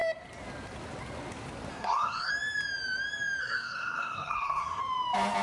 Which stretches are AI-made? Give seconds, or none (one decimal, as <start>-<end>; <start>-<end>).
1.7-2.3; 3.4-4.8